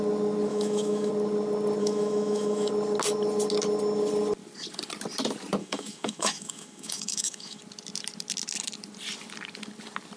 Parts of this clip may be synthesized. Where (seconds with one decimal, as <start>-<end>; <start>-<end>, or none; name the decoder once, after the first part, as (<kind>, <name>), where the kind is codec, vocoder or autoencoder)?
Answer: 0.5-1.1 (autoencoder, DAC-VAE); 1.8-2.7; 5.6-7.6